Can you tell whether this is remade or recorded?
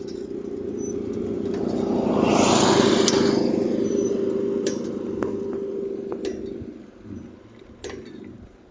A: recorded